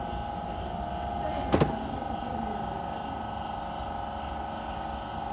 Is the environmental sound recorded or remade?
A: recorded